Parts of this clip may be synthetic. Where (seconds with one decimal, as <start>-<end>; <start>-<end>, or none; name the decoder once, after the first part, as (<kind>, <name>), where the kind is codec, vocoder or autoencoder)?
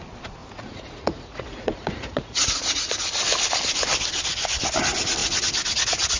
0.4-2.9 (vocoder, Vocos)